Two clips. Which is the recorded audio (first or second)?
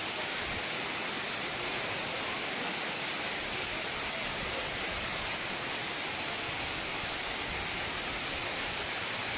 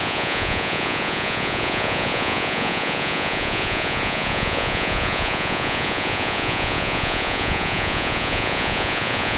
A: first